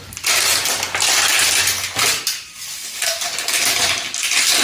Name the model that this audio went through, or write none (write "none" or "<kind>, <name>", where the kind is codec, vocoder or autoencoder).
none